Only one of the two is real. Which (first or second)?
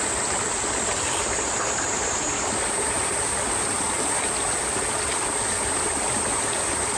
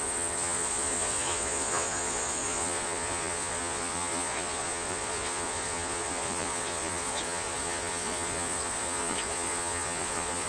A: first